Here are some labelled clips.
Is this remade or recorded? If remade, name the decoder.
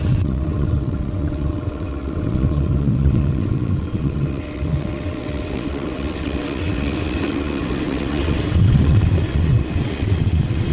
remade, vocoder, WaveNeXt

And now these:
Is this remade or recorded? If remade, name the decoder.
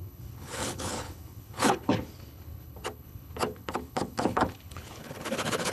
remade, codec, HILCodec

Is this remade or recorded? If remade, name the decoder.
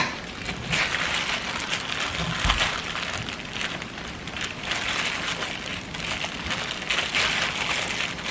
recorded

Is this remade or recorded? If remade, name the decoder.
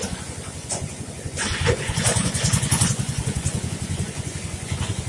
remade, vocoder, Vocos